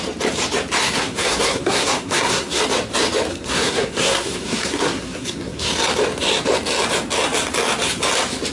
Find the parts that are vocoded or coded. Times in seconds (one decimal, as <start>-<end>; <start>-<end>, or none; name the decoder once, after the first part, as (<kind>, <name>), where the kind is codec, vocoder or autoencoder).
0.8-2.6 (codec, SNAC); 3.3-5.7